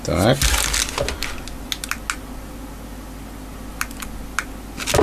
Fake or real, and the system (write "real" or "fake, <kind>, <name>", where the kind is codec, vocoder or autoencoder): real